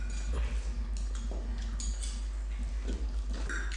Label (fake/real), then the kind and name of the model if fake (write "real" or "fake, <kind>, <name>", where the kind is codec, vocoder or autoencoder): real